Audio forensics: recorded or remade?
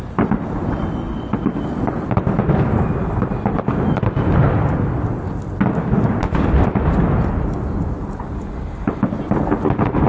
recorded